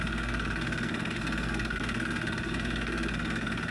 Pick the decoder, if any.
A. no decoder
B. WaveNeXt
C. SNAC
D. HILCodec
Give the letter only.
C